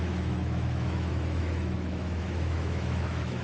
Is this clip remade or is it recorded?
remade